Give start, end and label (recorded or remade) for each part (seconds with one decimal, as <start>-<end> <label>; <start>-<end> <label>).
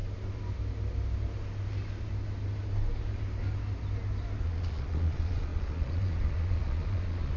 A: 0.0-4.4 recorded; 4.4-7.4 remade